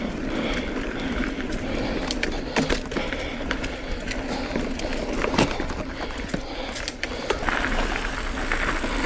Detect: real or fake real